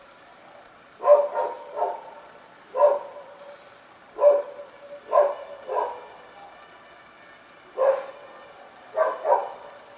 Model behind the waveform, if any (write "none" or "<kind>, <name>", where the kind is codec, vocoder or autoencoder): none